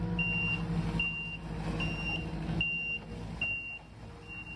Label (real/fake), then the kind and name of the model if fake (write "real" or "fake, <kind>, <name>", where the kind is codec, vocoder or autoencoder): real